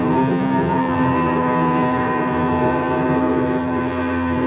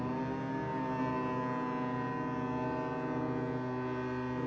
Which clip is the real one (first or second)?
second